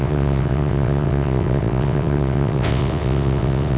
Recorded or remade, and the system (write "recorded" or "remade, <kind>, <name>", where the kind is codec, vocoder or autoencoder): remade, vocoder, WaveNeXt